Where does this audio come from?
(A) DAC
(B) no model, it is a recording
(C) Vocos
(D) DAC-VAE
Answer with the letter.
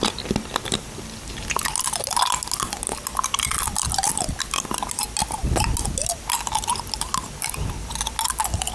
B